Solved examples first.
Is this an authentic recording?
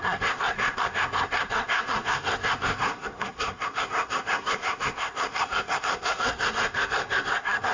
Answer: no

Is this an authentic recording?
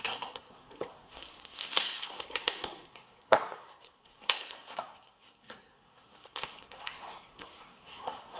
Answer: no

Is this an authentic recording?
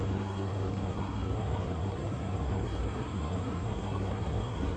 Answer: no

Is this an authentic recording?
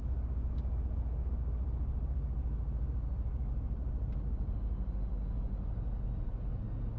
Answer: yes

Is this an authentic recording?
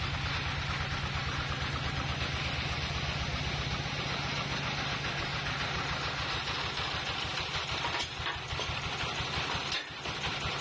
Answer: yes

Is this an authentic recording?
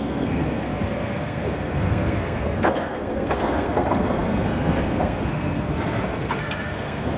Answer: no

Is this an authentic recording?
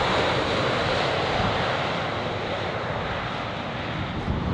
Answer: yes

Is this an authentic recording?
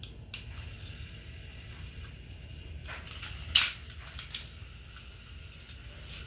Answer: yes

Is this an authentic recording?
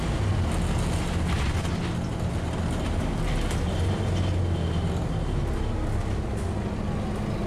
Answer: yes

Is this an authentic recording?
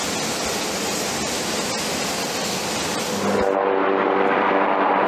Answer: yes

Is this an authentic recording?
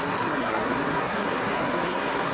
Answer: no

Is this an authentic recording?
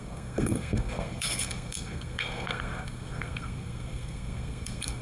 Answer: no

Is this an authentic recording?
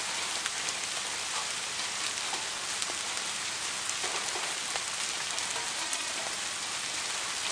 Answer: yes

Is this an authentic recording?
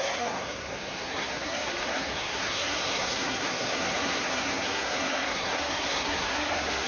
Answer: no